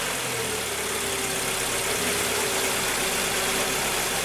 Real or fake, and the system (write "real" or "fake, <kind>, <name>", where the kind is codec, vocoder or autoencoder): real